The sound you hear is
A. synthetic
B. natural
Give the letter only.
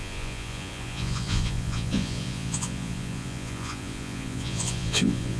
A